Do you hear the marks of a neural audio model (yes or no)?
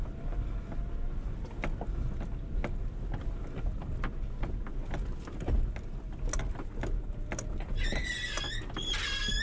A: no